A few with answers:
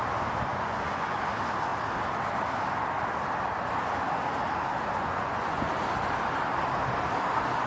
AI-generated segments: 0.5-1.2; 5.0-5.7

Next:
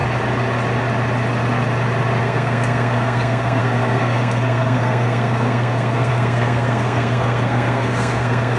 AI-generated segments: 2.2-8.6

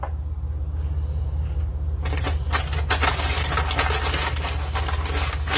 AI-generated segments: none

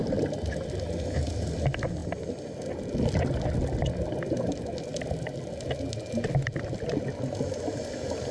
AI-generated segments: none

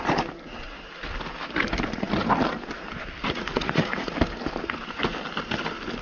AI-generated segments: 3.2-4.1

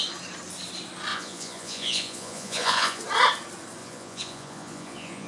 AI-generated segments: 1.1-3.0; 3.8-5.3

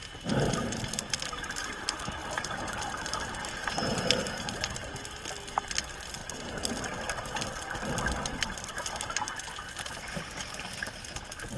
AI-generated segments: 0.0-0.8; 2.2-4.2